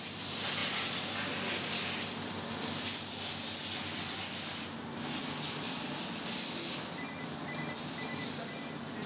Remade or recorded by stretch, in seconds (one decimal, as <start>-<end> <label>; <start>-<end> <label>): 0.0-9.1 recorded